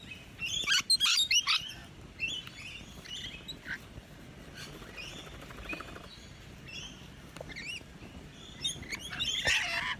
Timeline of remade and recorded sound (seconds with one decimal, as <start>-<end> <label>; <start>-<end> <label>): 0.0-10.0 recorded